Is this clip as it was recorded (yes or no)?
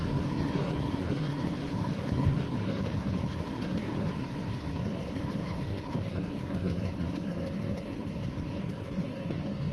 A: no